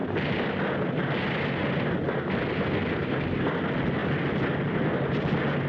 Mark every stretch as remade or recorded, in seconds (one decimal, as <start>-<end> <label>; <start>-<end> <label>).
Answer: 0.0-0.6 remade; 0.6-2.8 recorded; 2.8-3.4 remade; 3.4-5.7 recorded